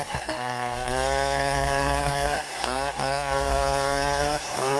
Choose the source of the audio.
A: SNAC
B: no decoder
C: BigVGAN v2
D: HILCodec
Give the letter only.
A